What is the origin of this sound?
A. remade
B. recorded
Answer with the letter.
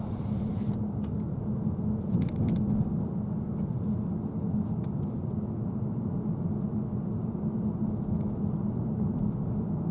B